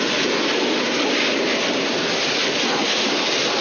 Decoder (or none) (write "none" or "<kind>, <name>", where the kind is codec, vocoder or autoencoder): none